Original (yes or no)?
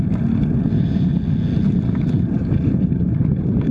yes